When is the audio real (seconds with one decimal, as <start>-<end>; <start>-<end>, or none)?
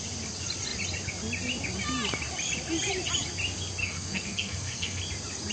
0.0-3.8; 5.0-5.5